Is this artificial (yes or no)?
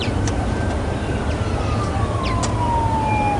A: no